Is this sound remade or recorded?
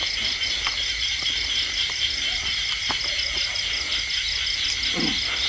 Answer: recorded